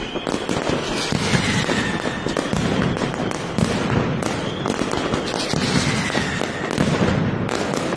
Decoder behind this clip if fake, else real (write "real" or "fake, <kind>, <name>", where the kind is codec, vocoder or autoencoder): real